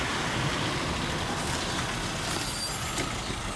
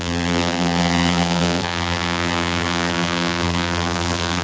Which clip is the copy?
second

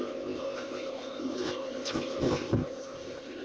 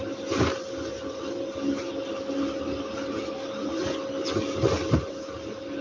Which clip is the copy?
first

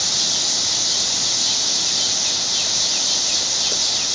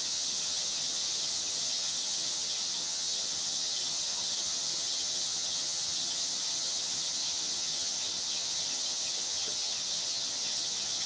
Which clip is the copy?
second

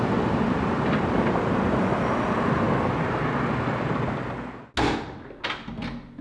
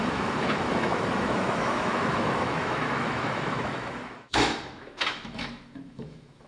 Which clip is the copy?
second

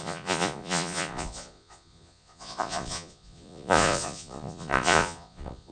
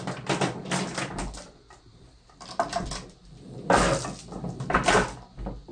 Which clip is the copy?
first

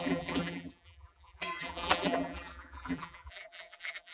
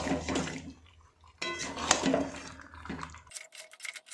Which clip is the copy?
first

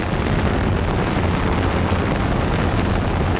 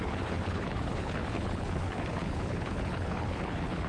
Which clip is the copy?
second